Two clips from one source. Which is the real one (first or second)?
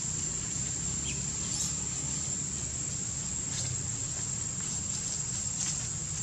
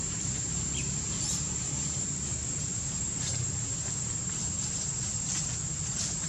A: first